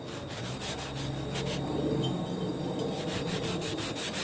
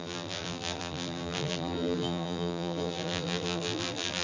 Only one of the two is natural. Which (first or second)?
first